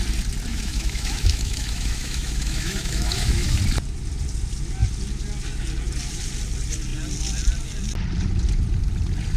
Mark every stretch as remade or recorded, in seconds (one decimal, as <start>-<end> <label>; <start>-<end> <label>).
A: 0.0-0.5 recorded; 0.5-3.6 remade; 3.6-9.4 recorded